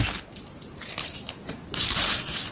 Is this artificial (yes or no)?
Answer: no